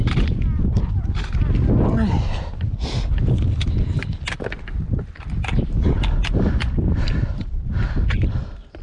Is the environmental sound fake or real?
real